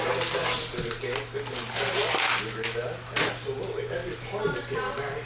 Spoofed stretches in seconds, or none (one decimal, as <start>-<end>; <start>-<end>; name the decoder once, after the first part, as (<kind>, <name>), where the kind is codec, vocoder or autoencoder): none